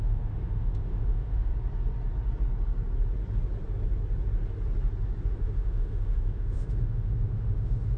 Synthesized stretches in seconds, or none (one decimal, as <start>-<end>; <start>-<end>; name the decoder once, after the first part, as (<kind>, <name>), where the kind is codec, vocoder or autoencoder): 0.0-1.5 (autoencoder, DAC-VAE); 5.3-8.0